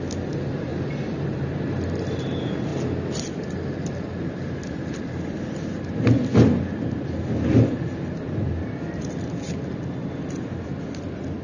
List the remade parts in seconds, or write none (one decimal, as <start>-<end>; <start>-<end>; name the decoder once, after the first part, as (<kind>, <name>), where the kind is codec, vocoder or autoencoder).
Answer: none